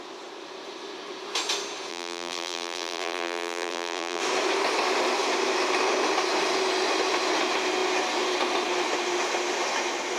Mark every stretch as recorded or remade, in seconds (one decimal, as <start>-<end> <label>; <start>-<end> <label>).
0.0-1.9 recorded; 1.9-4.2 remade; 4.2-10.2 recorded